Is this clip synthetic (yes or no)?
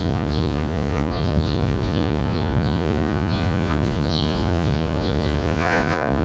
yes